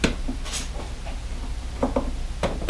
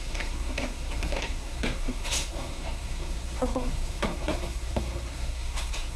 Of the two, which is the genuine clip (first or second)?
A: first